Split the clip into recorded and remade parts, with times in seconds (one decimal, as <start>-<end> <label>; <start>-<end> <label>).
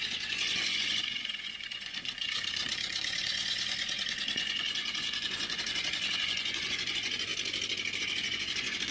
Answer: 0.0-7.3 remade; 7.3-8.0 recorded; 8.0-8.9 remade